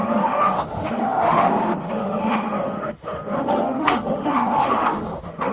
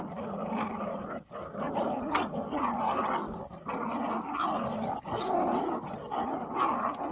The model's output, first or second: first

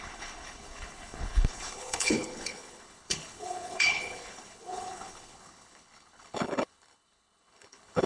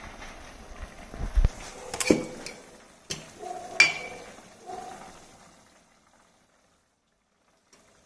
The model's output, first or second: first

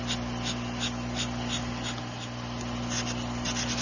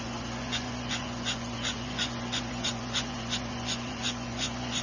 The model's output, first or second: second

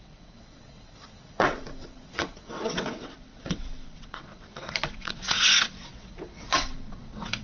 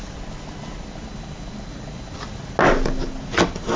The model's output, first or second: first